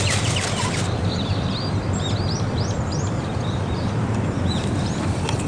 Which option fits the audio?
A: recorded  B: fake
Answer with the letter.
B